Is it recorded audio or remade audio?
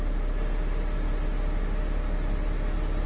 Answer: recorded